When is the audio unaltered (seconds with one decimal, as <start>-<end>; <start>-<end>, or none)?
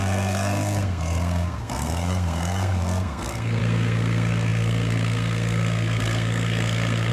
none